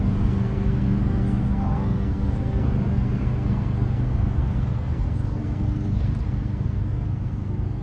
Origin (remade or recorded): remade